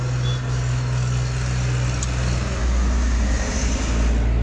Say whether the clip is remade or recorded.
recorded